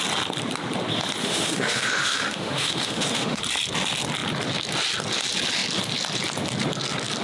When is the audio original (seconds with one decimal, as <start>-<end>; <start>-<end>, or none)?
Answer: 0.0-1.2; 3.4-7.2